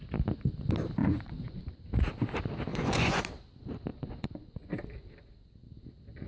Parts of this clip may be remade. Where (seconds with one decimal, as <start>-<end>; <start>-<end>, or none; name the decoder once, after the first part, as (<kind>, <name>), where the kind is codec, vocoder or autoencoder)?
1.0-1.7 (vocoder, Vocos); 2.7-3.2; 3.9-4.7